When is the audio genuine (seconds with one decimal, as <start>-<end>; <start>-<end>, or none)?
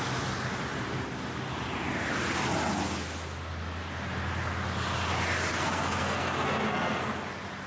0.0-5.5; 7.1-7.7